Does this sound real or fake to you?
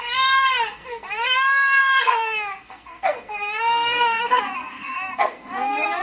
fake